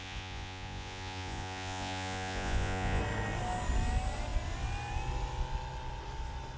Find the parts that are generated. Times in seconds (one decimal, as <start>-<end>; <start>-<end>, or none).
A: 0.0-3.0